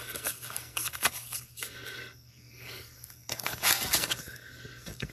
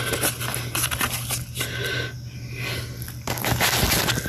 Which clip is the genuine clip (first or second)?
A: second